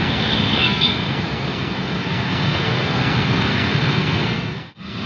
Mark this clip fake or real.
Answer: fake